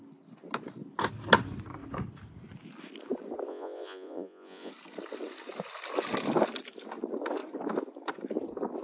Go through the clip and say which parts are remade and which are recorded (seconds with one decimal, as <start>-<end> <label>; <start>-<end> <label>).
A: 0.0-3.5 recorded; 3.5-4.7 remade; 4.7-8.8 recorded